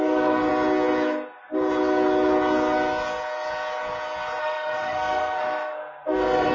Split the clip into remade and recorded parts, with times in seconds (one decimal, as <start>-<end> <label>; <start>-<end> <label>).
0.0-0.5 remade; 0.5-4.4 recorded; 4.4-6.5 remade